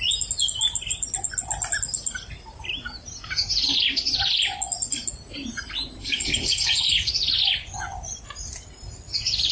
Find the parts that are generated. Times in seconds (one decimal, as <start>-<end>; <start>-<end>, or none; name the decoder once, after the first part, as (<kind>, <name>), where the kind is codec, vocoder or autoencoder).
6.0-7.1 (codec, HILCodec)